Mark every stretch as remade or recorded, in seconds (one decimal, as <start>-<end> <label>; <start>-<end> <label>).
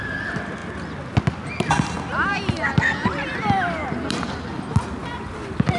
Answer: 0.0-5.0 recorded; 5.0-5.8 remade